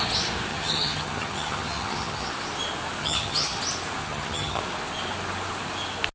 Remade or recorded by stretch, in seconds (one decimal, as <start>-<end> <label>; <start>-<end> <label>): 0.0-0.5 recorded; 0.5-2.3 remade; 2.3-3.0 recorded; 3.0-3.6 remade; 3.6-4.0 recorded; 4.0-4.6 remade; 4.6-6.1 recorded